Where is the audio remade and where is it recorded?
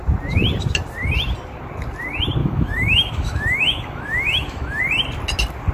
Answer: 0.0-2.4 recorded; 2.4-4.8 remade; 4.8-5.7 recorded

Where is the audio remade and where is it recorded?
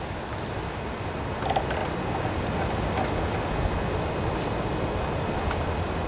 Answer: 0.0-6.1 recorded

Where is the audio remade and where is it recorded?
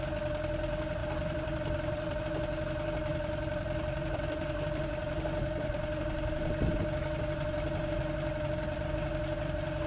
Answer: 0.0-1.0 recorded; 1.0-2.2 remade; 2.2-3.1 recorded; 3.1-6.8 remade; 6.8-9.9 recorded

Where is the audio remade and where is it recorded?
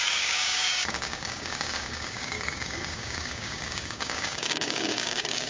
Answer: 0.0-5.5 remade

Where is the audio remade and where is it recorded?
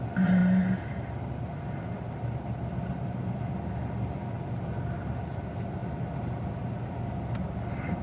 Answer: 0.0-8.0 recorded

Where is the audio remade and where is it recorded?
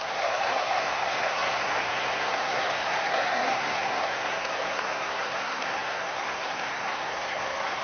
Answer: 0.0-7.8 remade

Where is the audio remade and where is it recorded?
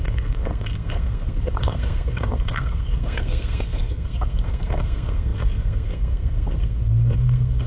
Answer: 0.0-7.7 remade